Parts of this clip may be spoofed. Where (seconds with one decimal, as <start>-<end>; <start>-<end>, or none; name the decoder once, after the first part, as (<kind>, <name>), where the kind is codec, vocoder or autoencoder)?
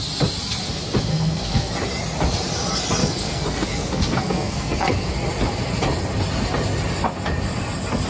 1.1-1.7 (codec, SNAC); 3.0-5.1